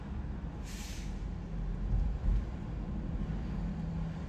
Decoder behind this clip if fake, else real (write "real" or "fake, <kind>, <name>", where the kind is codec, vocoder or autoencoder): real